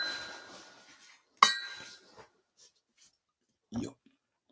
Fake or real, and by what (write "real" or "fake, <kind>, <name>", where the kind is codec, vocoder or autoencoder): real